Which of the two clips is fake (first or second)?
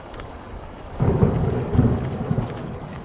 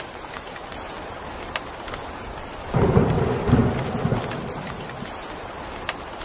first